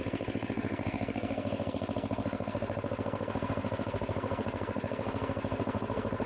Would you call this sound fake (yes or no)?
yes